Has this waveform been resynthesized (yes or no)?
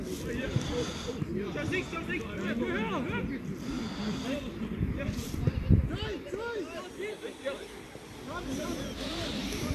no